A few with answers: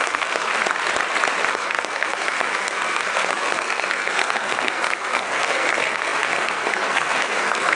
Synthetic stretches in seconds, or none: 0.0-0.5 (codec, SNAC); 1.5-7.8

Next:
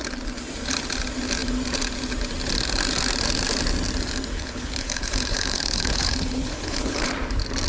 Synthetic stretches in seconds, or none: 4.3-7.1 (codec, HILCodec)

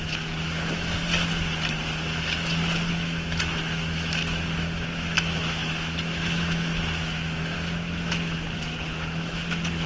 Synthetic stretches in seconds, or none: 0.0-1.0 (autoencoder, DAC-VAE); 2.9-9.9

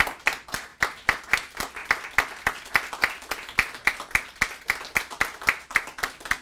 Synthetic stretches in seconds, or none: none

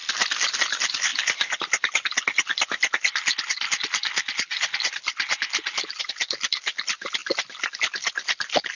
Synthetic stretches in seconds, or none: none

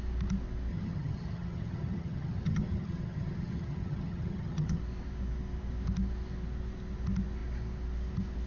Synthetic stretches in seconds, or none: 0.7-4.8 (vocoder, HiFi-GAN)